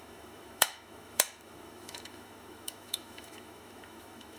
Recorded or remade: remade